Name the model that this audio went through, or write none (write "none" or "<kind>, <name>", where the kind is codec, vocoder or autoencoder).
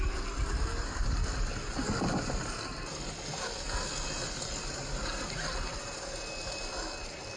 none